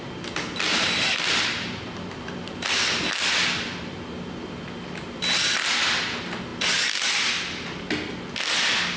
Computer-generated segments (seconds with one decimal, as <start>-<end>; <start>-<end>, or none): none